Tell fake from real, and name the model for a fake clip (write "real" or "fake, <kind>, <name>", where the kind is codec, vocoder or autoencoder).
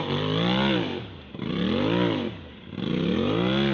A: real